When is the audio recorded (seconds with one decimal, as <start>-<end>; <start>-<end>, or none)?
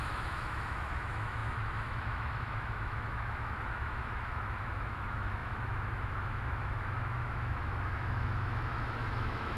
none